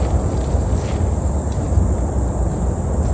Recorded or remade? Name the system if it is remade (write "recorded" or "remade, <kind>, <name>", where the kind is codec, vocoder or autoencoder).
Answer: recorded